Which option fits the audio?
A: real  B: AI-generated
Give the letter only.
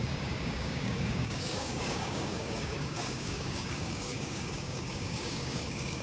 B